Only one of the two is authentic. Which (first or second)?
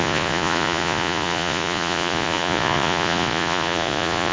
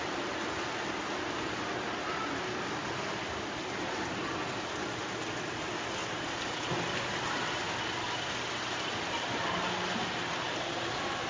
second